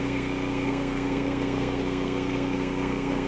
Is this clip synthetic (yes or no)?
yes